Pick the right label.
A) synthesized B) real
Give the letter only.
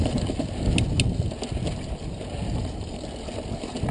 B